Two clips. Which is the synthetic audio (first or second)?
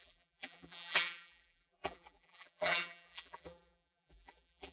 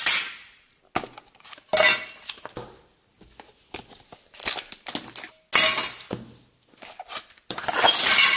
first